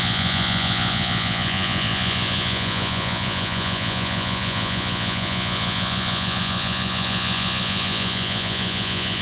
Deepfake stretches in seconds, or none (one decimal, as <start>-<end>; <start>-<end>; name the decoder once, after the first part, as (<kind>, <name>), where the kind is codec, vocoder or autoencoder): 0.0-9.2 (vocoder, Vocos)